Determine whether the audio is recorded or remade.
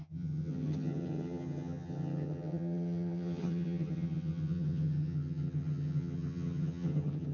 remade